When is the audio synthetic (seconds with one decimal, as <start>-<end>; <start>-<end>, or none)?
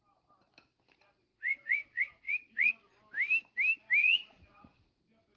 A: 1.3-2.7; 4.0-5.0